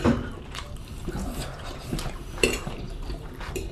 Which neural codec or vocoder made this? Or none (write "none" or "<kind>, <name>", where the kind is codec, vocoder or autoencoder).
vocoder, BigVGAN v2